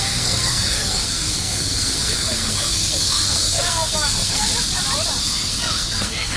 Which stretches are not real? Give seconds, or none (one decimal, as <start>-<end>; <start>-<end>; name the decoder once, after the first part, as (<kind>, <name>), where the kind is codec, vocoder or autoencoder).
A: 0.0-4.5 (codec, SNAC); 5.2-6.4